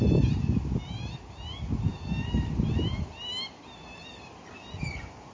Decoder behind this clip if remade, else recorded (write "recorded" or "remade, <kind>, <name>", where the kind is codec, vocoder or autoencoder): recorded